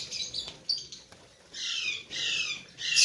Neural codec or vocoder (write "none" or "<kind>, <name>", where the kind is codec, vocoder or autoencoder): none